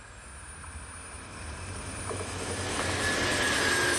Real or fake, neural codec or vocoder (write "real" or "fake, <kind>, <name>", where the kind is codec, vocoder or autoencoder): real